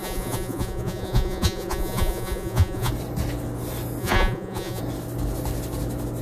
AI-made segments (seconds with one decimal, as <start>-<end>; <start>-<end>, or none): 0.0-2.9; 4.0-4.8